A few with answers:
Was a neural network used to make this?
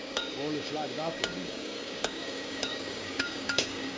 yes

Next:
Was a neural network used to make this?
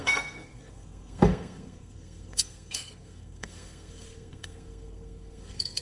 yes